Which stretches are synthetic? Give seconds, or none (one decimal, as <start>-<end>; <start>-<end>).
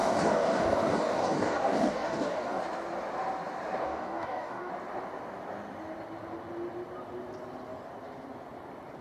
0.0-2.6; 3.8-4.7